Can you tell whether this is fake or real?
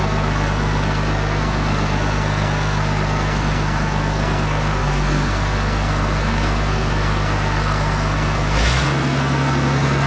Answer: fake